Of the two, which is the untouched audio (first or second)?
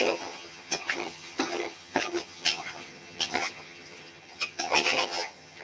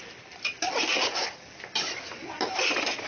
second